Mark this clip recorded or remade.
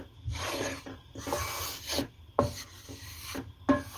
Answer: recorded